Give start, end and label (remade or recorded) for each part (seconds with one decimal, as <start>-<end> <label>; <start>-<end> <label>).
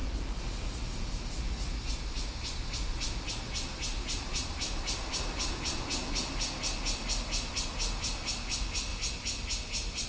0.0-10.1 recorded